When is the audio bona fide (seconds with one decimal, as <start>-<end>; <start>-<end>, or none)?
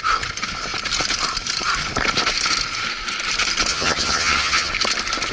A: 0.0-3.7; 4.7-5.3